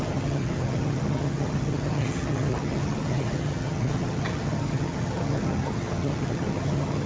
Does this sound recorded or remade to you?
remade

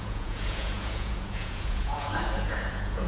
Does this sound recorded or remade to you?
remade